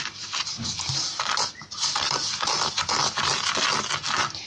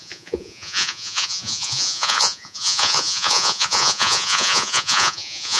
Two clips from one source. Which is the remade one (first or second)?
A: second